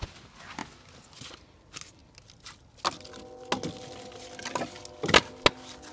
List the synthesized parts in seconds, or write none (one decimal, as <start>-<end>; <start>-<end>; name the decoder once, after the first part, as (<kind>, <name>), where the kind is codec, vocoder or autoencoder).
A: none